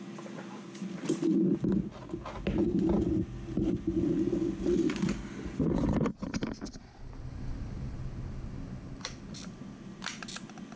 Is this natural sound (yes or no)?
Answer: yes